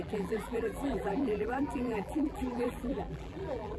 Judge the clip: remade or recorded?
remade